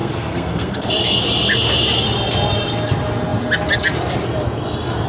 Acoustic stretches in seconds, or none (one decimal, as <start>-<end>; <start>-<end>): 0.9-5.1